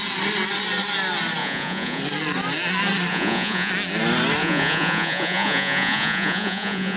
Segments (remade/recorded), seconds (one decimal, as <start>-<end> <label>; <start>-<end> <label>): 0.0-1.4 recorded; 1.4-2.0 remade; 2.0-3.1 recorded; 3.1-3.7 remade; 3.7-4.4 recorded; 4.4-7.0 remade